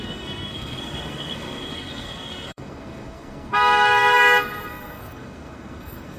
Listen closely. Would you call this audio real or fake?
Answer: fake